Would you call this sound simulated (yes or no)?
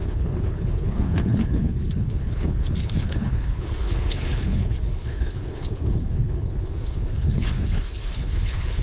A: yes